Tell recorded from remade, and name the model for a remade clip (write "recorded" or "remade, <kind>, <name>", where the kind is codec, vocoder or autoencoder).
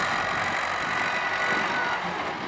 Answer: recorded